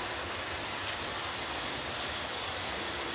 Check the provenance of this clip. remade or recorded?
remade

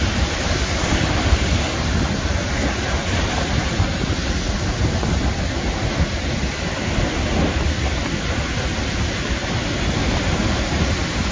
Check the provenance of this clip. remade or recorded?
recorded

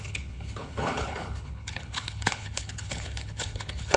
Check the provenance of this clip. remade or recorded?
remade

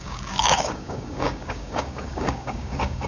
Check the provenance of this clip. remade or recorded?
remade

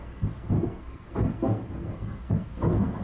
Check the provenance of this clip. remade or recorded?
remade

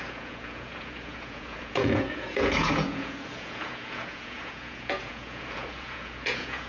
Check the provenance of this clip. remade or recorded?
remade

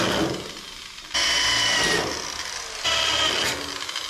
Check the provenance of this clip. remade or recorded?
recorded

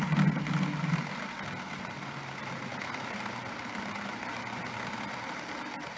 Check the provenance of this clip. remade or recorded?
recorded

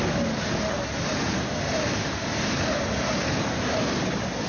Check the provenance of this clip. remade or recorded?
recorded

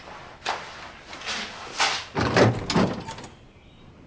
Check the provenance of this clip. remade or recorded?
recorded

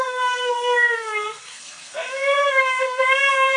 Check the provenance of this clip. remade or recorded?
remade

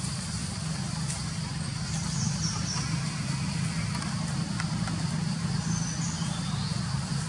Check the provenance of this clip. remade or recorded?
recorded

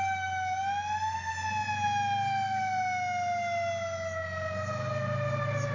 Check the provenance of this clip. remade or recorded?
recorded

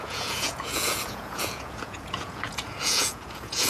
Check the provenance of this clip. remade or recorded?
remade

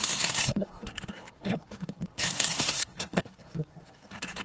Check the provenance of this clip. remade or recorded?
remade